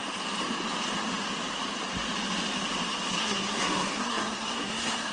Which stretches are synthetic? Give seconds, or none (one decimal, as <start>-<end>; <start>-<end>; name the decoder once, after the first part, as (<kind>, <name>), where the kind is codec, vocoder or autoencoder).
3.1-5.1 (codec, SNAC)